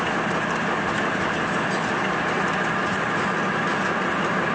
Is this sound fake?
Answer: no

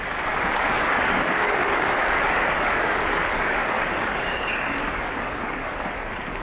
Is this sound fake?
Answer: yes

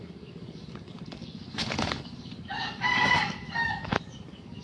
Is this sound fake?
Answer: yes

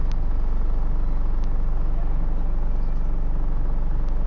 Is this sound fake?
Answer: no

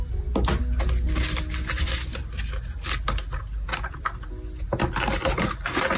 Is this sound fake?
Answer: no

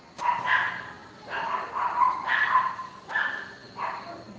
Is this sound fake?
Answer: no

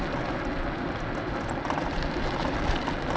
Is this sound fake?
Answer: no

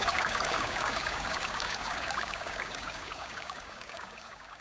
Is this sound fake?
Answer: yes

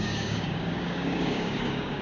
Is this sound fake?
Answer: yes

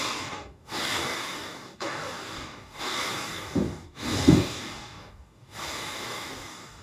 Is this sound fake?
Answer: yes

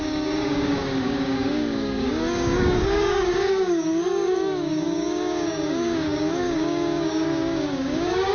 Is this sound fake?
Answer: yes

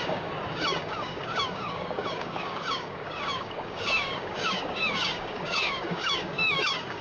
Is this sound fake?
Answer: yes